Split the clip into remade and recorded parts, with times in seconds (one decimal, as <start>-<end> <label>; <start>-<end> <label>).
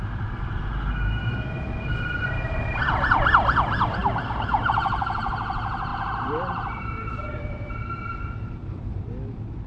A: 0.0-4.0 recorded; 4.0-5.3 remade; 5.3-5.9 recorded; 5.9-9.1 remade; 9.1-9.7 recorded